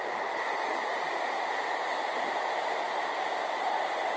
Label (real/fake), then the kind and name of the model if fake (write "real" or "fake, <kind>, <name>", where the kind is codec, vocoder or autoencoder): real